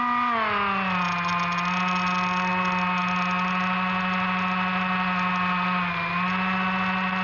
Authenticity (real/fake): real